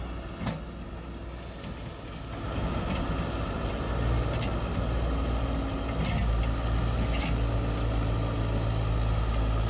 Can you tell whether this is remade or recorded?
recorded